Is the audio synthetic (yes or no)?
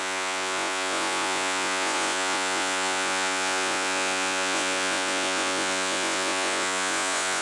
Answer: yes